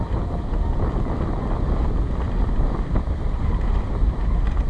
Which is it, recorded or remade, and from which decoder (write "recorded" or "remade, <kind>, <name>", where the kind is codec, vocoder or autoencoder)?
recorded